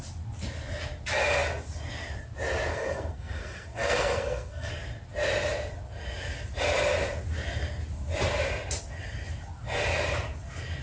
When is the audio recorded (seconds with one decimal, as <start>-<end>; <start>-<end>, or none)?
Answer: 0.0-2.7; 4.7-10.8